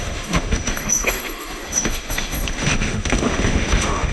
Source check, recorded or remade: remade